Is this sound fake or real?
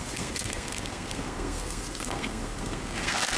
fake